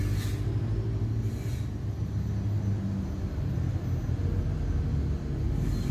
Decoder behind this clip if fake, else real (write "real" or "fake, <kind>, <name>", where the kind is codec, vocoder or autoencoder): real